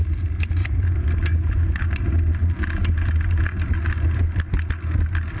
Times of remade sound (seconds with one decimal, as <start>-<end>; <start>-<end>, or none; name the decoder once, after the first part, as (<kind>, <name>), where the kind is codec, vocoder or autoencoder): none